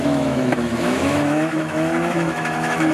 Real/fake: fake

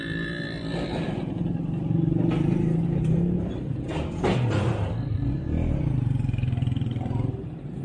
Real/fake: real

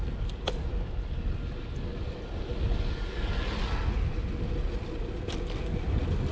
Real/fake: real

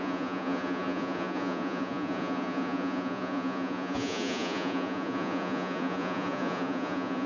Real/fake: fake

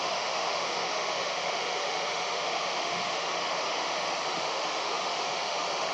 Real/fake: fake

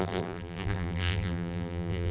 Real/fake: fake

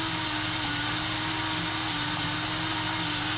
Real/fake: real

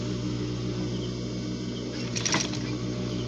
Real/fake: real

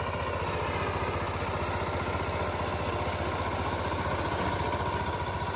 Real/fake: real